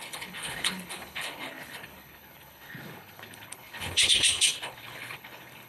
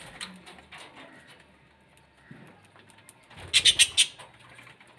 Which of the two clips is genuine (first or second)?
second